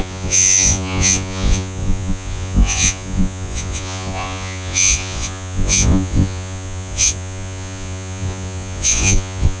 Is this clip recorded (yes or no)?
no